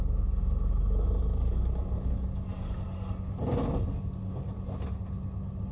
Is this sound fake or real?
real